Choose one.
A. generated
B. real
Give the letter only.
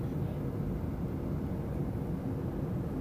B